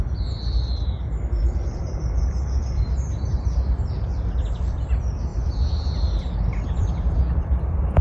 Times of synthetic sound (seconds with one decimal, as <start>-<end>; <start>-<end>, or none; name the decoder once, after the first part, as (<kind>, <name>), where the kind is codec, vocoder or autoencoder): 1.4-2.0 (vocoder, BigVGAN v2); 5.3-6.3